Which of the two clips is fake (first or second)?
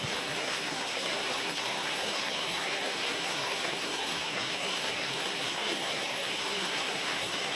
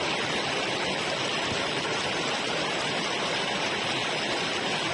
first